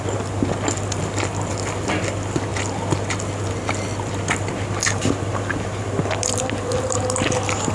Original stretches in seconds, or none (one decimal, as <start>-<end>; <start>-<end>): 0.0-7.7